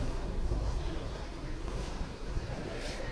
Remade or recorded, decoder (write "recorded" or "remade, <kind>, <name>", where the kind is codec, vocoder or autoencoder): remade, codec, SNAC